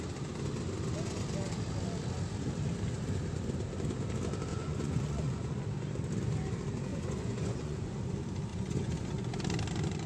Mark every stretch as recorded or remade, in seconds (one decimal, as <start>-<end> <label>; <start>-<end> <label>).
0.0-4.5 recorded; 4.5-5.6 remade; 5.6-6.9 recorded; 6.9-8.0 remade; 8.0-8.5 recorded; 8.5-9.3 remade; 9.3-10.1 recorded